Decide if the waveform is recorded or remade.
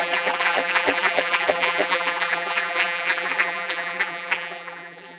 remade